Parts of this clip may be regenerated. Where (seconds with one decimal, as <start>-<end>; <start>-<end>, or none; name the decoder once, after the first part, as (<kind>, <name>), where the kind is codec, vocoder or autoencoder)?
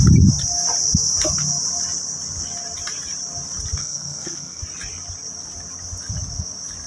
3.8-4.6 (codec, SNAC)